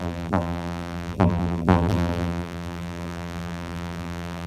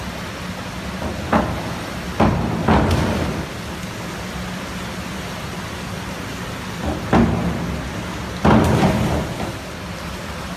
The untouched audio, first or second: second